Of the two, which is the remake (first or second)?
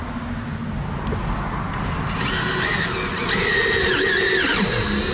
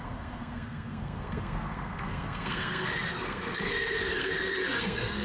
second